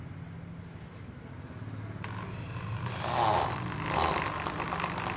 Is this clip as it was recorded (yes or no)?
yes